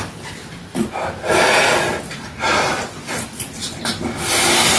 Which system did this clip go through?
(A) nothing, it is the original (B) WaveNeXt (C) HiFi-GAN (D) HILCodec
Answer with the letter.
A